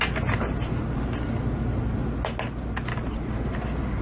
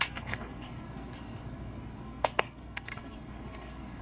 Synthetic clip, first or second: second